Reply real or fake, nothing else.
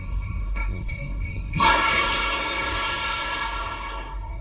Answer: fake